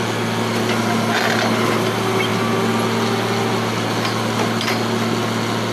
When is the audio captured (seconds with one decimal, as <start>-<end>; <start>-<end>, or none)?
0.0-5.7